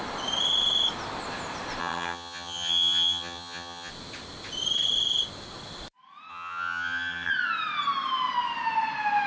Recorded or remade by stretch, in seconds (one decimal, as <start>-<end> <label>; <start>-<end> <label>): 0.0-1.8 recorded; 1.8-3.9 remade; 3.9-6.3 recorded; 6.3-7.3 remade; 7.3-9.3 recorded